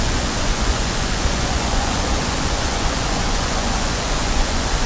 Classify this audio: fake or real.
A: fake